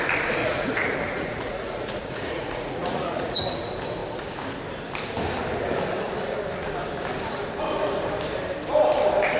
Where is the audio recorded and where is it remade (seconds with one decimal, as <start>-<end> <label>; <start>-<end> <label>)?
0.0-0.4 recorded; 0.4-3.4 remade; 3.4-9.4 recorded

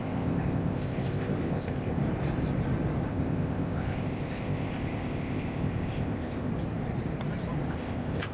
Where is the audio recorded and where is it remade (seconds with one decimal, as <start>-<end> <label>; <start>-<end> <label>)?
0.0-2.0 remade; 2.0-3.1 recorded; 3.1-6.5 remade; 6.5-7.7 recorded; 7.7-8.3 remade